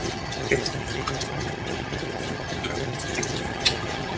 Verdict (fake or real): fake